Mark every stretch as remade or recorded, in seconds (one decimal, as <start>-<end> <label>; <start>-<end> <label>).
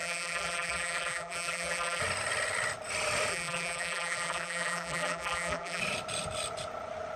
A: 0.0-2.0 remade; 2.0-3.3 recorded; 3.3-5.8 remade; 5.8-7.2 recorded